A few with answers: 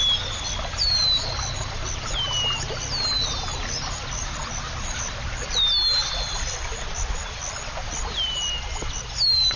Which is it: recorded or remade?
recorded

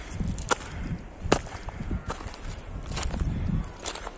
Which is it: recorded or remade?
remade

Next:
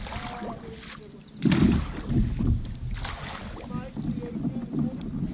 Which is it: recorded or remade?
recorded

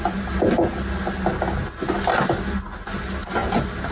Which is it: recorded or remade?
recorded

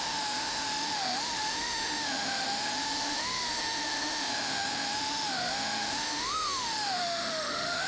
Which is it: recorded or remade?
remade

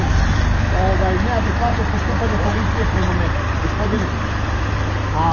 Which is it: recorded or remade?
recorded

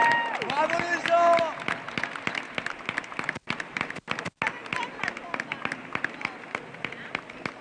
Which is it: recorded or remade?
recorded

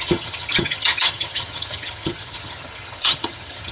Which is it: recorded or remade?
remade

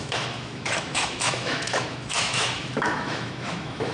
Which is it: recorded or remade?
remade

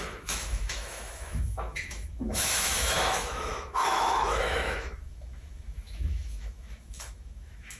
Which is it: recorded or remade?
remade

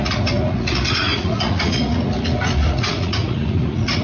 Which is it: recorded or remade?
remade